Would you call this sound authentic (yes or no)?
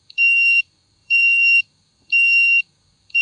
no